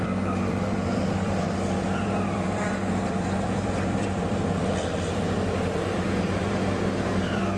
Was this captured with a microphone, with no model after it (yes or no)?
no